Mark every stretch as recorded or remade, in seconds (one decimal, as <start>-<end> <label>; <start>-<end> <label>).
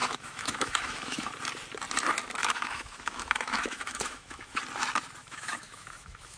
0.0-1.3 remade; 1.3-2.4 recorded; 2.4-4.6 remade; 4.6-5.2 recorded; 5.2-6.4 remade